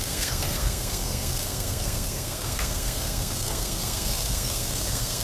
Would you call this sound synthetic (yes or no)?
yes